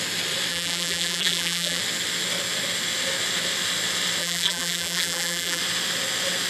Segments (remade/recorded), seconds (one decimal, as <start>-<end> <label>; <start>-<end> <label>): 0.0-0.5 recorded; 0.5-1.8 remade; 1.8-4.2 recorded; 4.2-5.6 remade; 5.6-6.5 recorded